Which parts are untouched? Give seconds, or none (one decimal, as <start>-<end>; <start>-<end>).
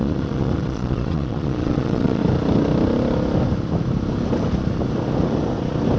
2.2-6.0